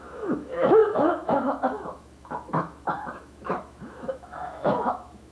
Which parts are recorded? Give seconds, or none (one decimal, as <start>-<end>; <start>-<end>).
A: none